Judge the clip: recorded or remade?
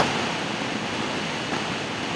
recorded